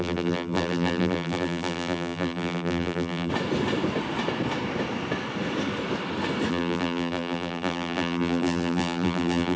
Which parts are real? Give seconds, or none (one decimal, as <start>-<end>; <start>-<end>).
3.3-6.5